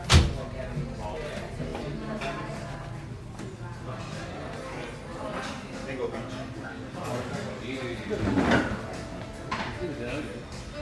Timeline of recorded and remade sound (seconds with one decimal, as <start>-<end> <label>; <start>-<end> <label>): 0.0-10.8 recorded